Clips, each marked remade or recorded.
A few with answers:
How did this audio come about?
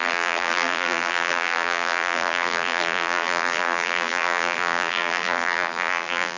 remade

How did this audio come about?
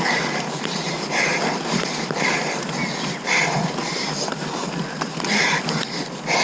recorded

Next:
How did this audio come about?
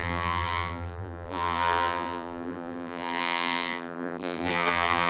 remade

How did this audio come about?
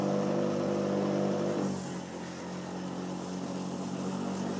recorded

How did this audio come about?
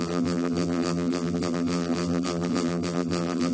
remade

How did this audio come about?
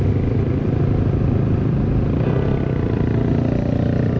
remade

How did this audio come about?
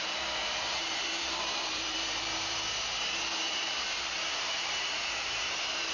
remade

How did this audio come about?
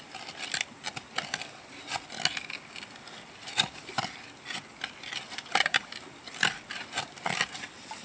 recorded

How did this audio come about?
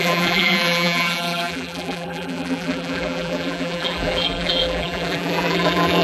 remade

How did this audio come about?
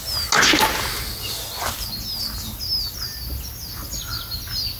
recorded